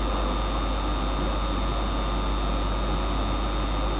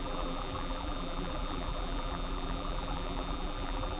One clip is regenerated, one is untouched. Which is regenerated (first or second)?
second